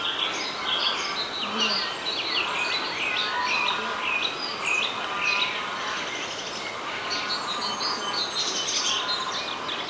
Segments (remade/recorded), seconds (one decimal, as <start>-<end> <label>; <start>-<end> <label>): 0.0-9.9 recorded